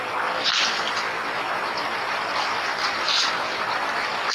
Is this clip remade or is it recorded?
recorded